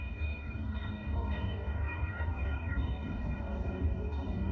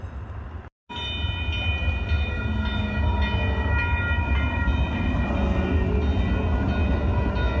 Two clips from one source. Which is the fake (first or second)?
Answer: first